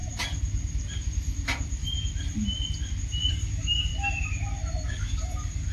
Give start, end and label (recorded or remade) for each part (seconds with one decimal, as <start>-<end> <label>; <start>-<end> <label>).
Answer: 0.0-3.3 recorded; 3.3-3.9 remade; 3.9-4.9 recorded; 4.9-5.7 remade